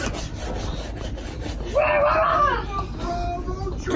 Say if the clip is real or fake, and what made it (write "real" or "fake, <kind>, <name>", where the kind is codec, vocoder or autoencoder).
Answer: real